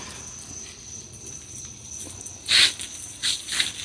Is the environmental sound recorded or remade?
recorded